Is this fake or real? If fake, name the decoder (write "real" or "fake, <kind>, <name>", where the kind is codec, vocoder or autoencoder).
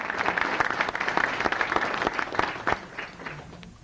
real